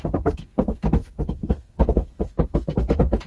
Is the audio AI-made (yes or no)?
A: yes